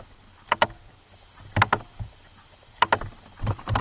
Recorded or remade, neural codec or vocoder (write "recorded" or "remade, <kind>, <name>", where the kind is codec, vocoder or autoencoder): recorded